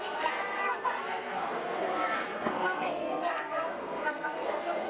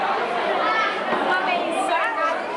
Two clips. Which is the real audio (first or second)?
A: second